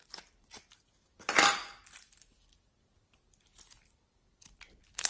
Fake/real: real